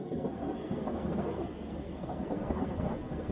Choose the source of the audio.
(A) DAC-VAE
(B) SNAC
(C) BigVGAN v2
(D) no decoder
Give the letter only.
B